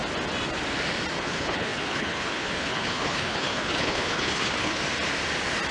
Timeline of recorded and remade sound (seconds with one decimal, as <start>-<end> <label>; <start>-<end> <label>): 0.0-1.2 recorded; 1.2-4.8 remade; 4.8-5.7 recorded